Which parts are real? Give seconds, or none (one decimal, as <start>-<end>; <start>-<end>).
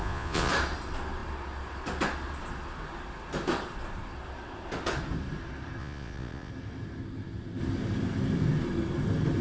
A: 0.5-5.8; 6.5-9.4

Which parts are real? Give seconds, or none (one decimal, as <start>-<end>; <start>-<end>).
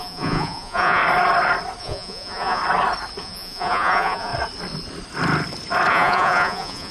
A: 1.0-1.8; 2.6-3.2; 4.3-5.9